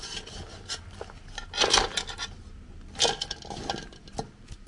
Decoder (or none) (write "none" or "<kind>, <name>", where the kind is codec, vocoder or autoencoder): none